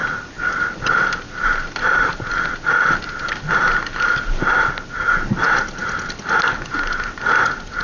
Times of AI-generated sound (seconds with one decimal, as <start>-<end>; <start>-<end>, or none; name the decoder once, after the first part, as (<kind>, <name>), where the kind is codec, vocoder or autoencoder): none